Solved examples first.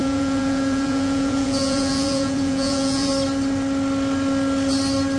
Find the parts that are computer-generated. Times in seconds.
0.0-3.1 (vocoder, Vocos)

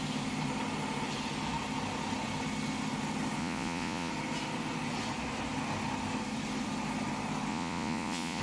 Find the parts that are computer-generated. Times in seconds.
3.4-4.1 (vocoder, Vocos); 7.5-8.4

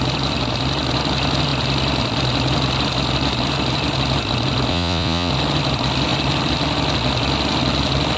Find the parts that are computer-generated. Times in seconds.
4.7-5.3 (vocoder, Vocos)

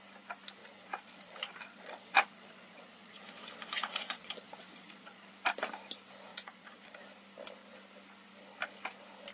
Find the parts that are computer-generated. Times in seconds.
0.6-5.3 (vocoder, Vocos); 6.3-7.0

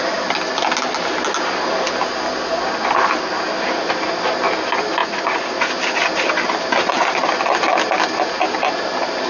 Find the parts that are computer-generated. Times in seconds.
5.0-5.7 (vocoder, Vocos)

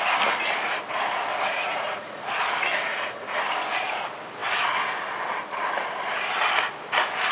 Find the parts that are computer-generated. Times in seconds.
1.3-2.2 (vocoder, Vocos); 2.7-3.4

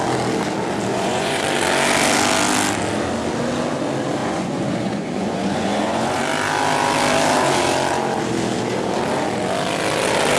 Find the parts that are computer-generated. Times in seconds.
0.9-1.4 (vocoder, Vocos); 4.2-6.2